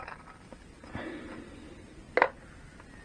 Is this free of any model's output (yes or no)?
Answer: yes